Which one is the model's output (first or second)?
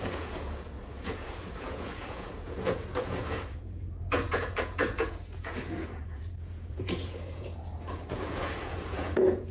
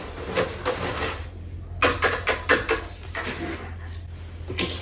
first